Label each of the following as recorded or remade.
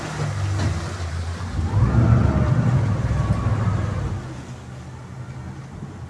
recorded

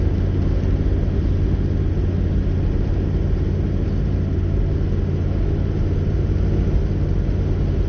recorded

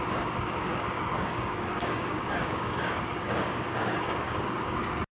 remade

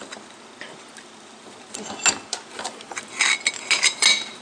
recorded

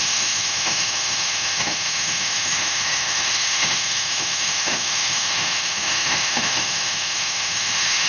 remade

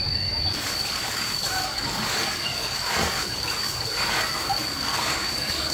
remade